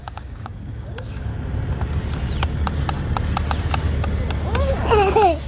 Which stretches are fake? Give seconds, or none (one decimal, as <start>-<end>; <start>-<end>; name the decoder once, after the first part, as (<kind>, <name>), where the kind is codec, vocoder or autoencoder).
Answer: 0.0-1.3 (codec, DAC); 4.6-5.5